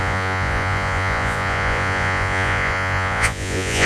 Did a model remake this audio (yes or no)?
yes